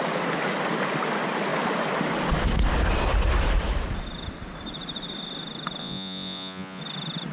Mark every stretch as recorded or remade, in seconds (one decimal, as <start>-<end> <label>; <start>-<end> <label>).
0.0-5.8 recorded; 5.8-6.8 remade; 6.8-7.3 recorded